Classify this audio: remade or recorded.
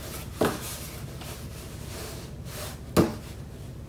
recorded